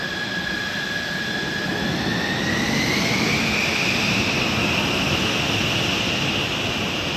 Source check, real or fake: real